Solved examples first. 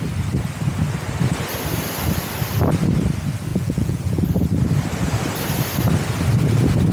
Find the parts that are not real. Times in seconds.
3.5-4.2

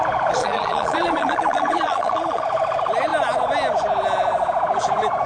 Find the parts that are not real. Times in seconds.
0.4-2.4

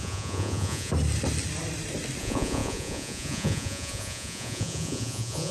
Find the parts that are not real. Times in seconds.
0.0-0.9; 2.2-5.5

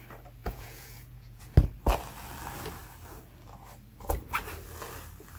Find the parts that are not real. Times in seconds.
0.4-1.4

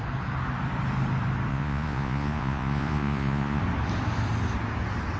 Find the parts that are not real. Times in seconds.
1.5-3.6

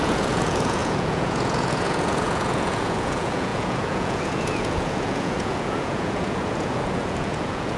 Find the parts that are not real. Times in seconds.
0.0-7.8